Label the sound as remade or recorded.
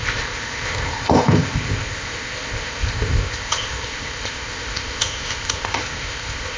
remade